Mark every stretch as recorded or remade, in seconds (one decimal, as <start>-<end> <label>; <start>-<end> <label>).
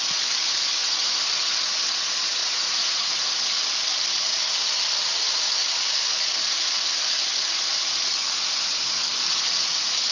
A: 0.0-2.4 recorded; 2.4-3.1 remade; 3.1-10.1 recorded